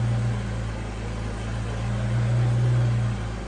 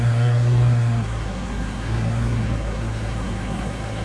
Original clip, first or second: first